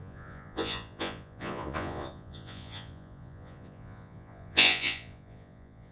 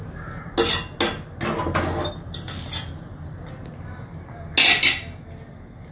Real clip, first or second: second